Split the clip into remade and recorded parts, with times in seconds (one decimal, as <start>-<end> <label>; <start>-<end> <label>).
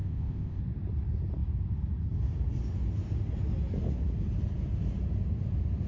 0.0-0.6 remade; 0.6-5.9 recorded